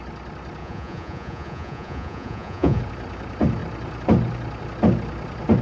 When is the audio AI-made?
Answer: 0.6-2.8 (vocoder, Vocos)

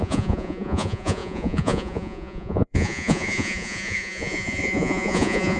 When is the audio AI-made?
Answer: 0.0-5.6 (vocoder, Vocos)

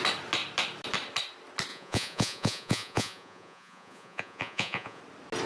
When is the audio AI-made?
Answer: 1.7-5.0 (vocoder, Vocos)